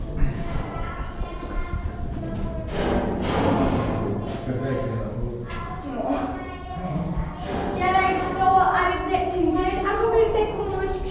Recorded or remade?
recorded